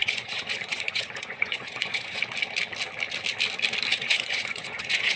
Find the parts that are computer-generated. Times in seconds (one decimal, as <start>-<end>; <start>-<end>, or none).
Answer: 0.0-2.2; 3.9-5.2